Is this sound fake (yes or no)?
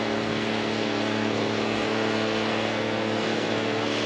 yes